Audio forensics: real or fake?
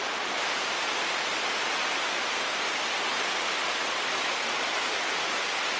real